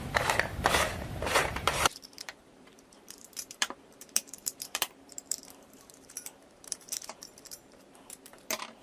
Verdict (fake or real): fake